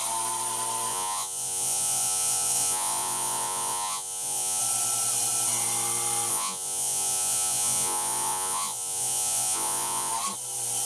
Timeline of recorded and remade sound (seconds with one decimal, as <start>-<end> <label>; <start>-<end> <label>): 0.0-0.9 recorded; 0.9-4.6 remade; 4.6-6.3 recorded; 6.3-10.1 remade; 10.1-10.9 recorded